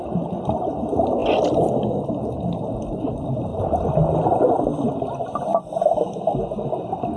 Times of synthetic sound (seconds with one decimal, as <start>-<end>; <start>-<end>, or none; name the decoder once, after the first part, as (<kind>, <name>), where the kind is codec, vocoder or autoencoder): none